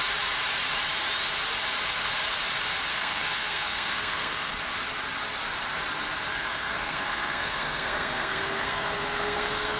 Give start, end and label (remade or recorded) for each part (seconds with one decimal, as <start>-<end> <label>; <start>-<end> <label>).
0.0-2.9 recorded; 2.9-4.5 remade; 4.5-6.3 recorded; 6.3-9.8 remade